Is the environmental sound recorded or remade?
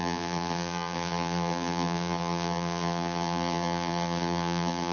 remade